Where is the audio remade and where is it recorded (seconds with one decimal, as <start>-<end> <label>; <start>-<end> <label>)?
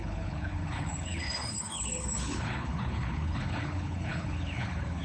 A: 0.0-5.0 remade